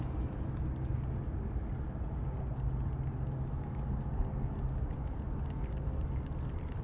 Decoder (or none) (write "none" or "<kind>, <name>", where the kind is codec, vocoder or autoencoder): none